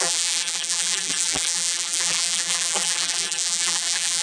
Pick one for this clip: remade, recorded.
remade